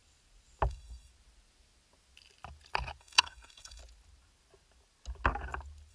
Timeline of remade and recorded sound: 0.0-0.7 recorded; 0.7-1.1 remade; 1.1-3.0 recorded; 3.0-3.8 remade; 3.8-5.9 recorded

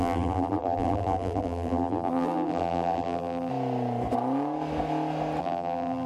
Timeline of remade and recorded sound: 0.0-3.5 remade; 3.5-5.4 recorded; 5.4-6.1 remade

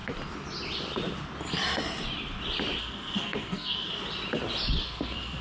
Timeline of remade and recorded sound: 0.0-2.8 recorded; 2.8-3.9 remade; 3.9-4.8 recorded; 4.8-5.4 remade

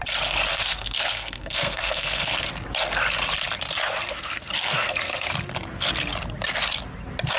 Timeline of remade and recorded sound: 0.0-0.5 recorded; 0.5-2.5 remade; 2.5-4.1 recorded; 4.1-5.3 remade; 5.3-7.4 recorded

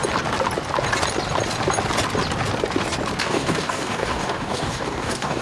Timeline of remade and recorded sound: 0.0-3.2 recorded; 3.2-5.4 remade

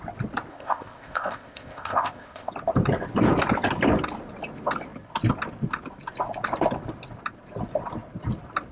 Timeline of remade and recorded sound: 0.0-0.5 recorded; 0.5-2.5 remade; 2.5-8.7 recorded